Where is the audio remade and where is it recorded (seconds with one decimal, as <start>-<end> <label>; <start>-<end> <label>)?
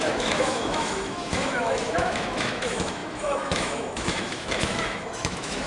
0.0-5.7 remade